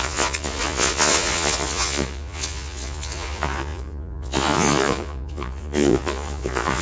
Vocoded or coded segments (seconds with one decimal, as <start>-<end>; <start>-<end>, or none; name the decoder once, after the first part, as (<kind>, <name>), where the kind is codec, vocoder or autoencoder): 0.0-6.8 (vocoder, Vocos)